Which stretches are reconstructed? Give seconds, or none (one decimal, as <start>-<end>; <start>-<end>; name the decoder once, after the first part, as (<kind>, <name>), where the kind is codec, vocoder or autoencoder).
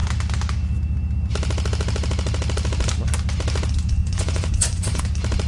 4.0-5.0 (vocoder, Vocos)